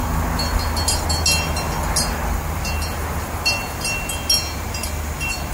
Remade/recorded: recorded